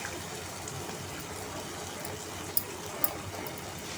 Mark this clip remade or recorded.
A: recorded